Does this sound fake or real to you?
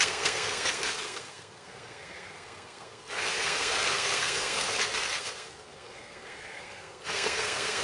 fake